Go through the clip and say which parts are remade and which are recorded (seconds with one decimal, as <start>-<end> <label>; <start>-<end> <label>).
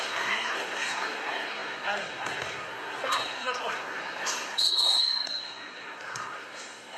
0.0-7.0 remade